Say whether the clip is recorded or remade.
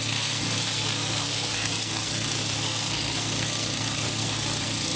remade